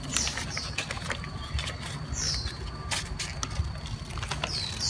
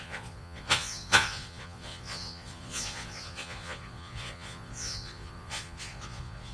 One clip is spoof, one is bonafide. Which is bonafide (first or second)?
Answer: first